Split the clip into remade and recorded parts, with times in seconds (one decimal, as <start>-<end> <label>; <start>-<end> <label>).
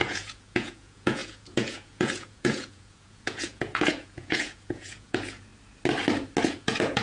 0.0-5.5 remade; 5.5-6.4 recorded; 6.4-7.0 remade